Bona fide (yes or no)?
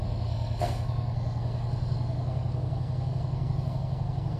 no